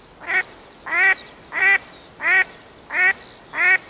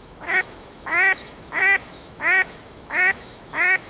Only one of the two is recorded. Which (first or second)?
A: first